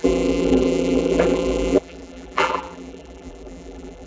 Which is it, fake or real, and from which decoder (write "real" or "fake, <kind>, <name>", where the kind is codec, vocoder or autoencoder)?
fake, vocoder, BigVGAN v2